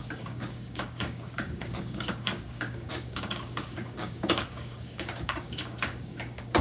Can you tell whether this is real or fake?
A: fake